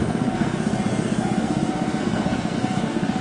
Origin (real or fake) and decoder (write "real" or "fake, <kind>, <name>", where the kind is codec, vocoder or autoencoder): fake, codec, SNAC